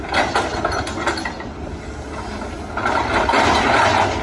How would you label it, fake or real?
real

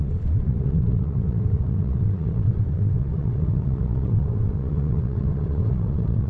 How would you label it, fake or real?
fake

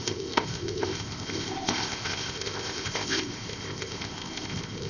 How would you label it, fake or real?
fake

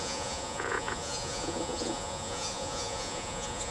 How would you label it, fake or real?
fake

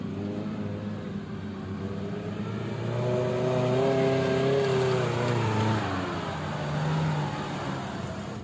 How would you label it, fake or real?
real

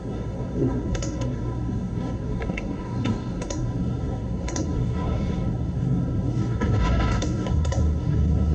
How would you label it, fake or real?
fake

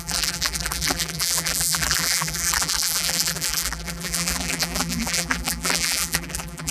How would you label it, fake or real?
fake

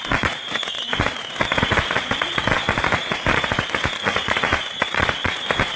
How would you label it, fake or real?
fake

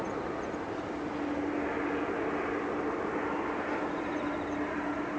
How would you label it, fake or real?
real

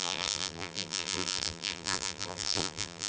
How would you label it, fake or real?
fake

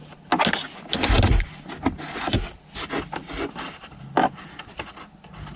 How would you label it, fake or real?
real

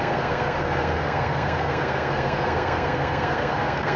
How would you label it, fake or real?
fake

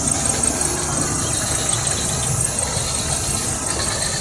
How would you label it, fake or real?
real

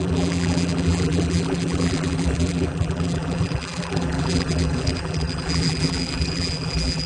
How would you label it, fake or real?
fake